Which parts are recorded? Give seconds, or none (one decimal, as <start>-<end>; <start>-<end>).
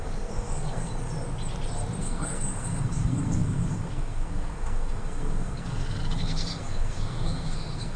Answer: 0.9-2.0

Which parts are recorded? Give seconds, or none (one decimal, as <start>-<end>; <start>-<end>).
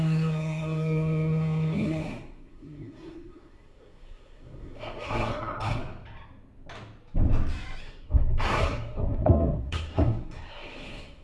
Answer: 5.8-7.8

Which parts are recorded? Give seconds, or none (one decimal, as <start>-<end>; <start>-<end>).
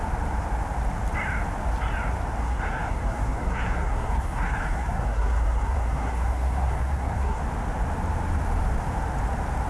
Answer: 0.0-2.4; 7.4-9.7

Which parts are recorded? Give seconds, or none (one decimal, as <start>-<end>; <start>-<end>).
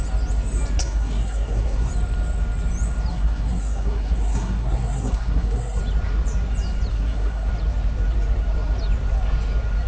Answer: 0.0-0.8; 1.9-3.1; 5.8-6.9; 7.5-9.9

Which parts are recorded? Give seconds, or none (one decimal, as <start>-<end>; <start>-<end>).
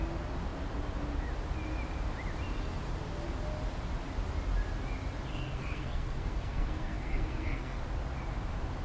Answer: 0.0-5.3; 7.8-8.8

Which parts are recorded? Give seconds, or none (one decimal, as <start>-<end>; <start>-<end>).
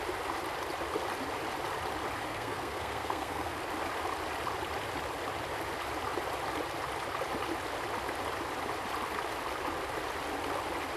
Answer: 0.0-2.3; 3.6-11.0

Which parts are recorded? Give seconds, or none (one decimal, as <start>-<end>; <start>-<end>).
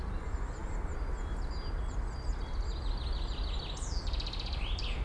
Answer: 0.0-5.0